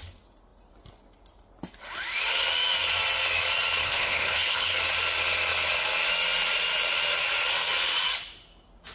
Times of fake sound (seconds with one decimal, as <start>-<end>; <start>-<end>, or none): 3.8-4.8